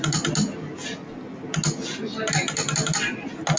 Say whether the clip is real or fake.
real